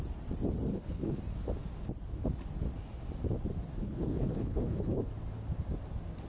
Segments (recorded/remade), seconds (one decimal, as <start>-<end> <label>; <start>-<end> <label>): 0.0-0.7 recorded; 0.7-1.2 remade; 1.2-3.8 recorded; 3.8-5.1 remade; 5.1-6.3 recorded